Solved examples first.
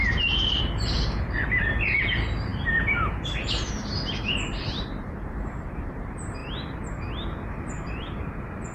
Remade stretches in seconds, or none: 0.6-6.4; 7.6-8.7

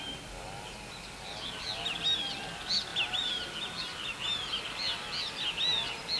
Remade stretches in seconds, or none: none

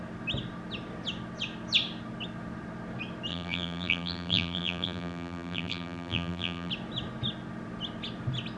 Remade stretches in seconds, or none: 3.3-6.7

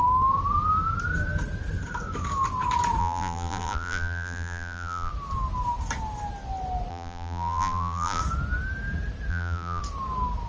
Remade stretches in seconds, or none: 3.0-5.1; 6.9-8.2; 9.3-9.8

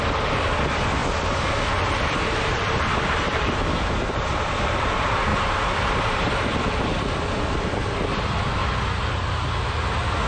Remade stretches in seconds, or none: 0.0-8.6

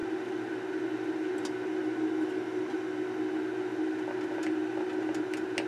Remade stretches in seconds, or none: none